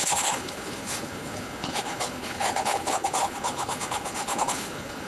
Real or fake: fake